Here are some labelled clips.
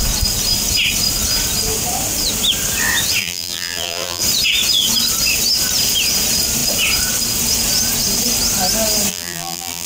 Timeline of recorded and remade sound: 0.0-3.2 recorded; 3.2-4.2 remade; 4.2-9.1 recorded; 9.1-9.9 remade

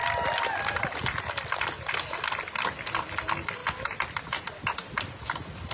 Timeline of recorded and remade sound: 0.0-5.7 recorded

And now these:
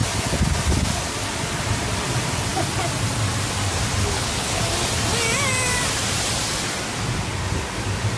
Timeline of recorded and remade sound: 0.0-4.0 recorded; 4.0-4.6 remade; 4.6-8.2 recorded

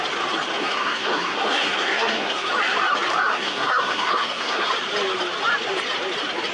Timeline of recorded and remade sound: 0.0-0.6 recorded; 0.6-2.5 remade; 2.5-3.3 recorded; 3.3-4.7 remade; 4.7-6.5 recorded